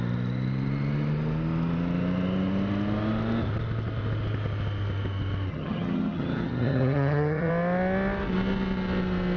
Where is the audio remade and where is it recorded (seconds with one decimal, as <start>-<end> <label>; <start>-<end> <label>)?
0.0-5.5 recorded; 5.5-7.5 remade; 7.5-9.4 recorded